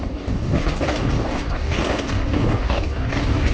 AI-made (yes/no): yes